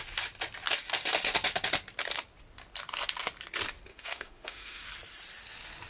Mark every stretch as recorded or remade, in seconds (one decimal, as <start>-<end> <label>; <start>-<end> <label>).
0.0-3.9 recorded; 3.9-4.8 remade; 4.8-5.9 recorded